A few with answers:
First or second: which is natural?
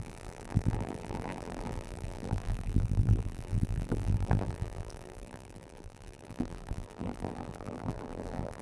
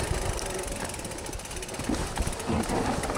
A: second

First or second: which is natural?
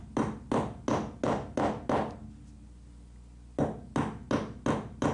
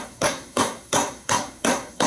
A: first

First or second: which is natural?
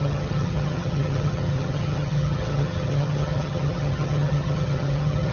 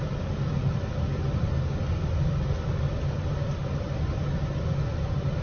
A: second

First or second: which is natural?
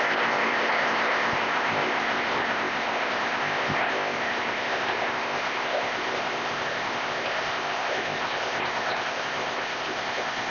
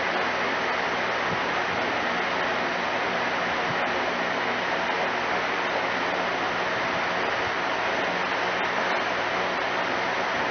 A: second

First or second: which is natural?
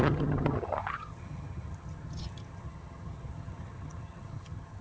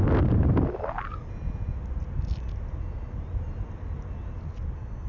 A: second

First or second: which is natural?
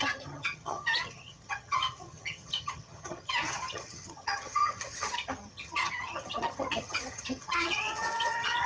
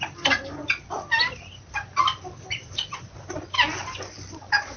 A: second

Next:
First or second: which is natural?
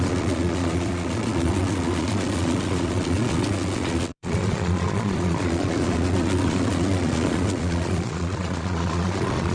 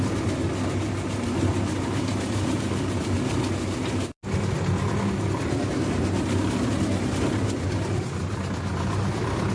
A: second